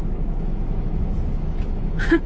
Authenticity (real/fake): fake